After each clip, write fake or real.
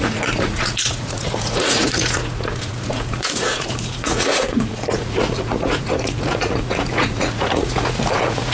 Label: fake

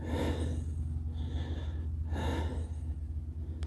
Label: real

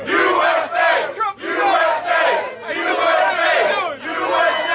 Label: real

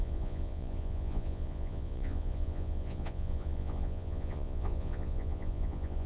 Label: fake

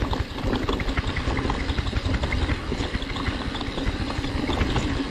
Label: real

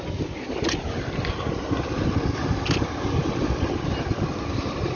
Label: real